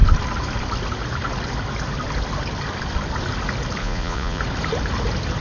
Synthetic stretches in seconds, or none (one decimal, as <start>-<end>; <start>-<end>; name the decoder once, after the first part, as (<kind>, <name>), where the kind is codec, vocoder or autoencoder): 3.8-4.4 (vocoder, Vocos)